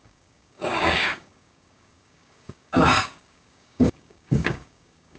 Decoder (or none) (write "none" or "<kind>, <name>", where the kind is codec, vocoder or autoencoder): codec, DAC